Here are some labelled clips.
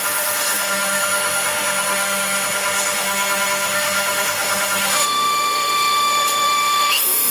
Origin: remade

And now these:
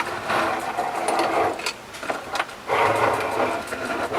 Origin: recorded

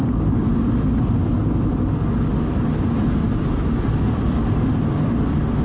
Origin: recorded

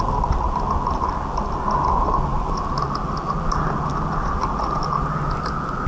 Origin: recorded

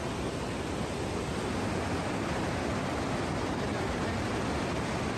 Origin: recorded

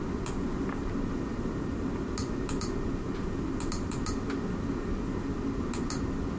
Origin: recorded